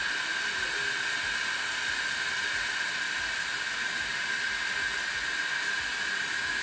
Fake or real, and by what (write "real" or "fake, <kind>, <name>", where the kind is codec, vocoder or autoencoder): real